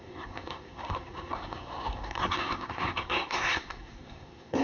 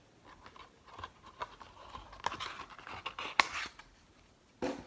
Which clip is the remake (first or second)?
first